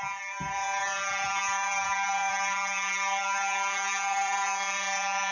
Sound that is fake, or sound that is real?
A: fake